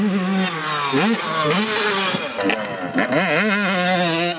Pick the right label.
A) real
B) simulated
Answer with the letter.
A